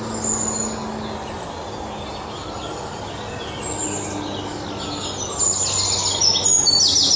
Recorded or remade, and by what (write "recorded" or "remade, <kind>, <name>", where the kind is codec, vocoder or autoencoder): recorded